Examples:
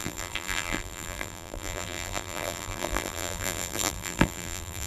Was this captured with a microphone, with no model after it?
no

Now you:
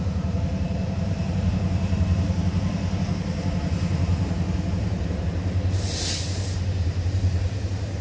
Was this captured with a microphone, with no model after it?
no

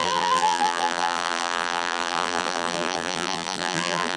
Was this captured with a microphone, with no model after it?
no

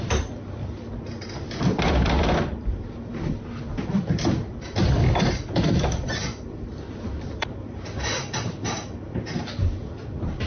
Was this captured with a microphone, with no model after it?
no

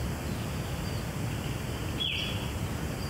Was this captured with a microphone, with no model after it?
no